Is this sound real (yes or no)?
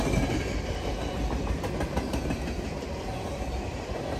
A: yes